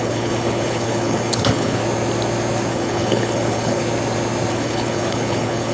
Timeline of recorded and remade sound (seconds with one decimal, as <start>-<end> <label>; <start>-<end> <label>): 0.0-1.8 remade; 1.8-2.7 recorded; 2.7-3.8 remade; 3.8-4.5 recorded; 4.5-5.7 remade